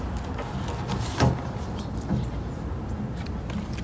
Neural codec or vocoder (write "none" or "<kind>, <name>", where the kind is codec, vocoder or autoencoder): none